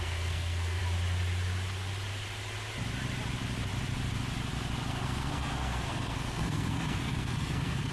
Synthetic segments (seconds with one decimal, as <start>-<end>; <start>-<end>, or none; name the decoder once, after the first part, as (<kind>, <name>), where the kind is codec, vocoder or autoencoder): 0.0-0.8 (codec, SNAC); 4.9-7.9